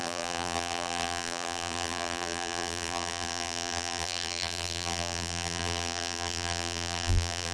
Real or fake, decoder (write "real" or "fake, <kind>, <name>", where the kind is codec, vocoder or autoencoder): fake, vocoder, BigVGAN v2